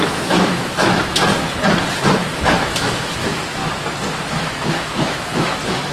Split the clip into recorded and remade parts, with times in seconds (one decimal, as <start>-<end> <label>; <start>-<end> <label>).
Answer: 0.0-1.3 remade; 1.3-2.3 recorded; 2.3-3.6 remade; 3.6-4.3 recorded; 4.3-5.9 remade